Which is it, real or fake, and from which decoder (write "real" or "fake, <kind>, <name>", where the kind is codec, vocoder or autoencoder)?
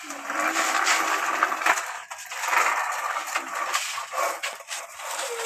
real